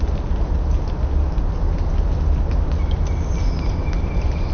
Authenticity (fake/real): real